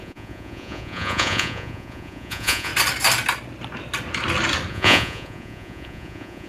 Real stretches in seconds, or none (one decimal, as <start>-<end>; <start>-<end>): 2.7-4.7